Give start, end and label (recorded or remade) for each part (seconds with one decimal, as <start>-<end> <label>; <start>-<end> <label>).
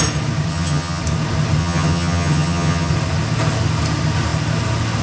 0.0-0.5 recorded; 0.5-1.0 remade; 1.0-1.6 recorded; 1.6-2.9 remade; 2.9-5.0 recorded